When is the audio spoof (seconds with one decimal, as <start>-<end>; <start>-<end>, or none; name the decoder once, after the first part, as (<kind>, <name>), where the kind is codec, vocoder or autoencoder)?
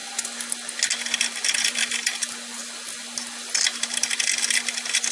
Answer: 1.2-5.1 (vocoder, BigVGAN v2)